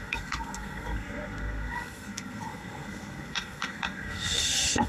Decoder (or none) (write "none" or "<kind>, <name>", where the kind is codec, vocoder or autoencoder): codec, SNAC